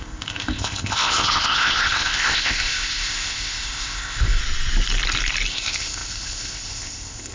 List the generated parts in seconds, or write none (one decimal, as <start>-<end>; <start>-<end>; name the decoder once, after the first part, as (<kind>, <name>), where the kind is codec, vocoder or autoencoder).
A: 0.0-4.4 (codec, ZipCodec); 5.5-7.3